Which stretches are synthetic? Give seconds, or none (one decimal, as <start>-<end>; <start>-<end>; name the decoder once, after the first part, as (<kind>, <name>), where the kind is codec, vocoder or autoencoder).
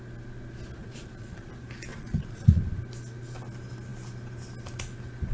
0.8-1.5 (vocoder, Vocos); 1.9-2.6